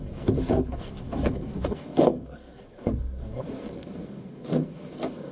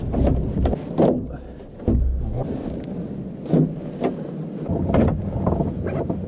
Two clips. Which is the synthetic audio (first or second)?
first